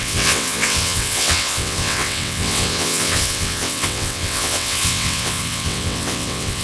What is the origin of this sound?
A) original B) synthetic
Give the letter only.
B